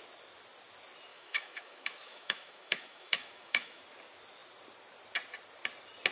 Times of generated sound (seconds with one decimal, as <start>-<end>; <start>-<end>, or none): 1.1-3.8